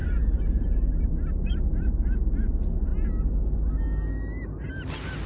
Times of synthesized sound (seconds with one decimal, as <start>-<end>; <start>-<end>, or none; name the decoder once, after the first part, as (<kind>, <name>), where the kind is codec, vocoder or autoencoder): 0.0-1.1 (vocoder, BigVGAN v2); 1.5-2.2